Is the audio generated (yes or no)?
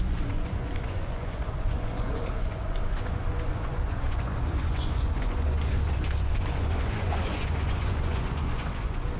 yes